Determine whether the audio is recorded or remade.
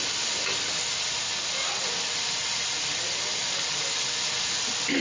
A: recorded